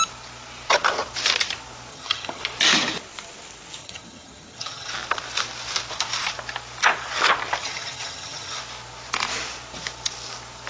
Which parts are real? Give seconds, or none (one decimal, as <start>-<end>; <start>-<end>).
0.0-1.9; 2.4-3.8; 4.9-7.6; 8.6-10.7